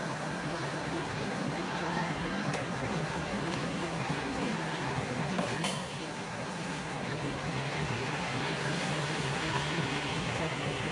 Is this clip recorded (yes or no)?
no